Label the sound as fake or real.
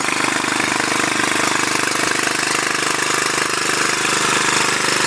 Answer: real